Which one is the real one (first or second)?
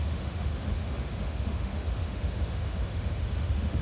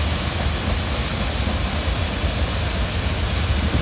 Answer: second